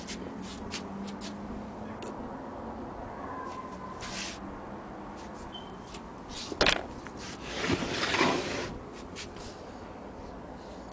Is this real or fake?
real